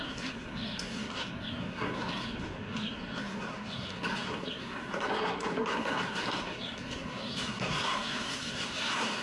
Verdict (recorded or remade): remade